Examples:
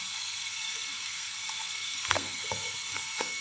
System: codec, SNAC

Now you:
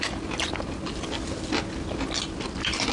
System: none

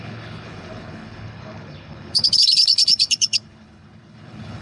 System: codec, HILCodec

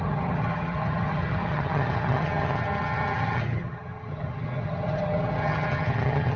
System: vocoder, HiFi-GAN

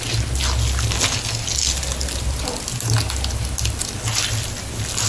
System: none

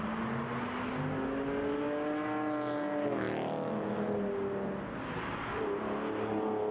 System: none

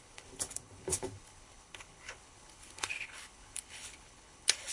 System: codec, HILCodec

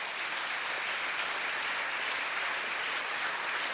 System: none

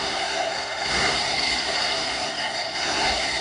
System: codec, SNAC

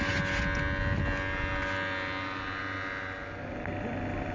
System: none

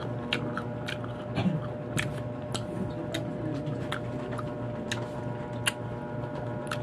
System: none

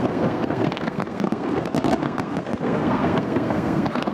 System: codec, SNAC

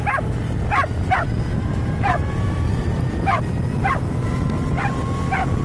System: none